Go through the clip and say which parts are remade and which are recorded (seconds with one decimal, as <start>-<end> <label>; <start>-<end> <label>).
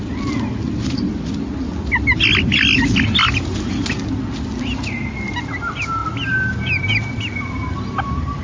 0.0-8.4 recorded